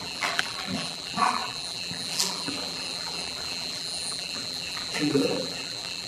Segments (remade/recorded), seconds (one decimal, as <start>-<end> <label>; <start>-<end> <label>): 0.0-6.1 remade